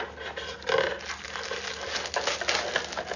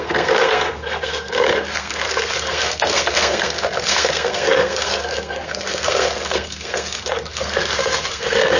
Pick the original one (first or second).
first